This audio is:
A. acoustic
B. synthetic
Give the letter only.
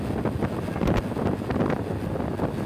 A